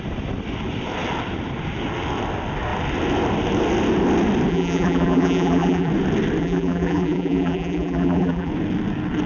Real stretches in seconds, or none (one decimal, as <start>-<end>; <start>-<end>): 0.0-4.5; 5.9-6.4; 8.5-9.3